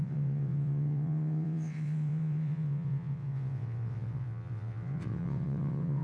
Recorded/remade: remade